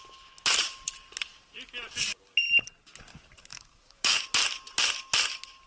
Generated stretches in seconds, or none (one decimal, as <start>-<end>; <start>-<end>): 3.5-4.2